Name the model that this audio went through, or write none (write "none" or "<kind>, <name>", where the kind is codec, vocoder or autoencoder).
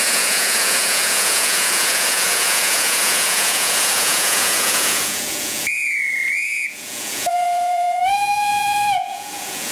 vocoder, Vocos